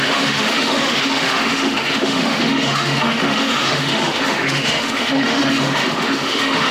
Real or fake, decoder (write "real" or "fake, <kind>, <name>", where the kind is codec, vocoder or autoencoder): fake, autoencoder, DAC-VAE